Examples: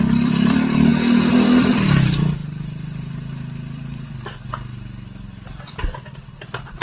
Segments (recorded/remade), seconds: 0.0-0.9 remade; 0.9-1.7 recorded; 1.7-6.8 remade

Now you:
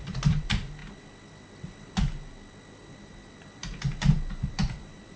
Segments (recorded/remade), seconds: 0.0-0.8 remade; 0.8-2.8 recorded; 2.8-3.6 remade; 3.6-4.3 recorded; 4.3-5.2 remade

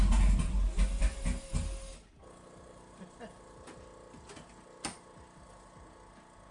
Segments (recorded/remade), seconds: 0.0-6.5 recorded

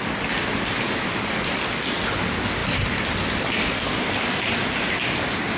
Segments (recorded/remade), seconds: 0.0-5.6 recorded

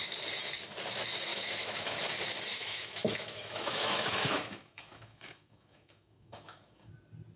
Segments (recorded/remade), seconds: 0.0-1.3 recorded; 1.3-2.0 remade; 2.0-2.5 recorded; 2.5-6.9 remade; 6.9-7.4 recorded

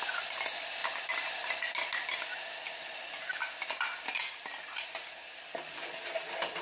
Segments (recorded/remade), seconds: 0.0-5.5 recorded; 5.5-6.0 remade; 6.0-6.6 recorded

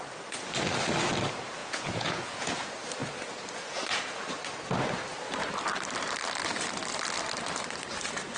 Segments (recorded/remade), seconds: 0.0-1.6 recorded; 1.6-2.5 remade; 2.5-8.4 recorded

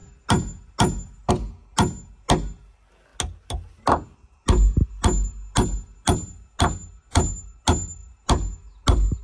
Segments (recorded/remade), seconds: 0.0-9.2 recorded